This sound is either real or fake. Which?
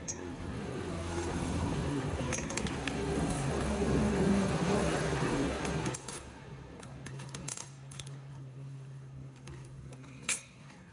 fake